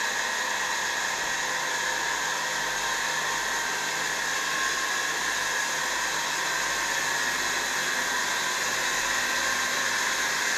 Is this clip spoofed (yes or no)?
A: no